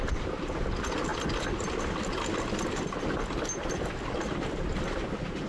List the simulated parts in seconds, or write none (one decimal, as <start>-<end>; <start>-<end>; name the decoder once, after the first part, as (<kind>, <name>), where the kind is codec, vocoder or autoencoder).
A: none